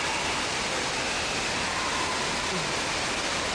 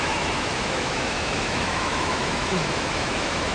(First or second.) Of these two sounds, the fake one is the second